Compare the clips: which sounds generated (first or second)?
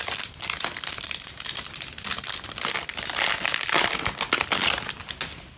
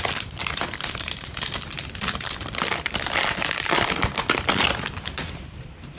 second